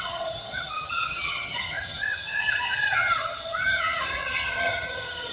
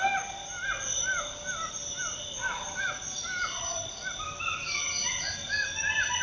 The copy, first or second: first